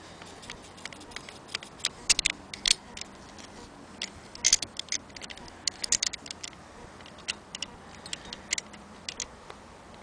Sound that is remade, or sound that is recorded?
recorded